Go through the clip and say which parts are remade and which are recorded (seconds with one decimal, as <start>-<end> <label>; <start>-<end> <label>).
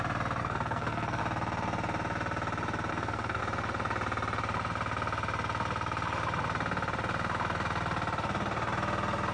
0.0-0.4 recorded; 0.4-1.2 remade; 1.2-2.9 recorded; 2.9-3.4 remade; 3.4-9.3 recorded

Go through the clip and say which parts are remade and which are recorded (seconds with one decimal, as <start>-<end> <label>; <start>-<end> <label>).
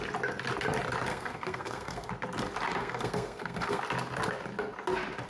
0.0-1.1 recorded; 1.1-2.1 remade; 2.1-2.8 recorded; 2.8-3.8 remade; 3.8-5.3 recorded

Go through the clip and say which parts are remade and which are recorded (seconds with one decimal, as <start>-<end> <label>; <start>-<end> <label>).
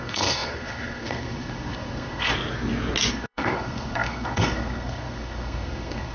0.0-2.3 remade; 2.3-3.1 recorded; 3.1-6.1 remade